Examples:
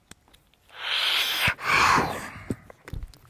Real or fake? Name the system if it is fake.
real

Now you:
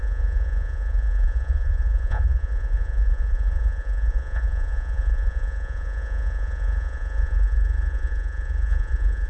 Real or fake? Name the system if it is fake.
fake, vocoder, Vocos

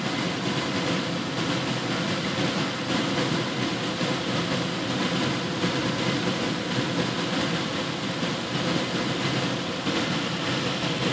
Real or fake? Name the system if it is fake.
real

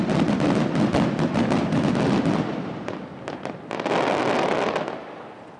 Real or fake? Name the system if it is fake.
real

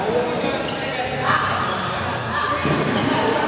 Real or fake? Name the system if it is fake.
real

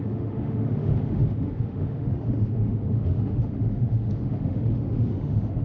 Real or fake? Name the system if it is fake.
fake, autoencoder, DAC-VAE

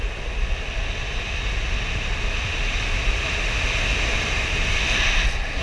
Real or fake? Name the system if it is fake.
real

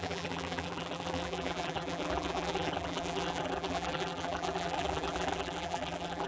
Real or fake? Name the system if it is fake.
fake, vocoder, BigVGAN v2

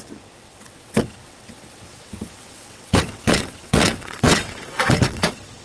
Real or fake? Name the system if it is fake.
fake, vocoder, WaveNeXt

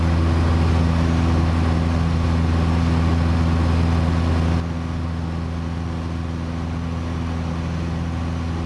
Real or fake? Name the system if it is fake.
real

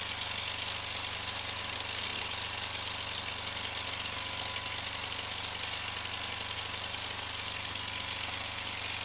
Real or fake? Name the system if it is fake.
real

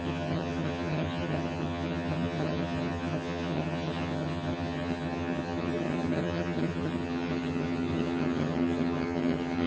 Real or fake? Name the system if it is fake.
fake, vocoder, HiFi-GAN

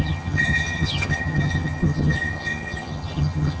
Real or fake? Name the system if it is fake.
fake, vocoder, HiFi-GAN